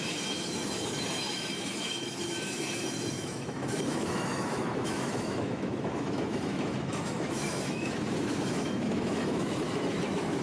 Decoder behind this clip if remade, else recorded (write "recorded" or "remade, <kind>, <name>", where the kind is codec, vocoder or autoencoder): remade, autoencoder, DAC-VAE